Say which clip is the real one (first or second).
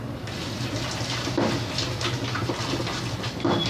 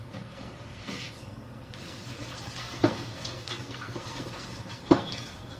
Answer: first